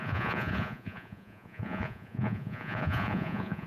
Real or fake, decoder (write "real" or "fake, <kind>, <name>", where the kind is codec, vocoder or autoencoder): fake, vocoder, Vocos